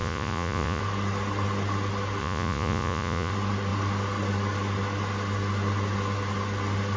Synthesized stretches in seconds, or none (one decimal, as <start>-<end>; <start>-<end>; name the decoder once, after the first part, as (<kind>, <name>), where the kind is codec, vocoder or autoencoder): 0.0-0.8 (vocoder, Vocos); 2.2-3.3